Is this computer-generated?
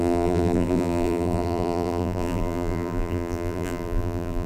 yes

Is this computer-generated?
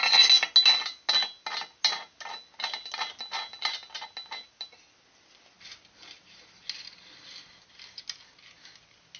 no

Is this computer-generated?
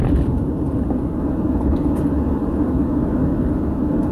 no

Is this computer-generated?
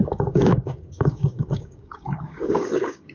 yes